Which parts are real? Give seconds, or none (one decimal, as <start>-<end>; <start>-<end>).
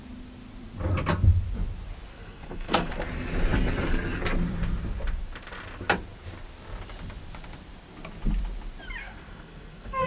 0.0-2.1; 2.9-9.0